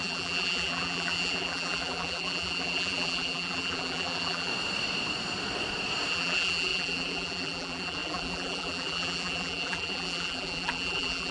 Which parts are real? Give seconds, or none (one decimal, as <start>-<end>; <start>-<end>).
4.5-6.1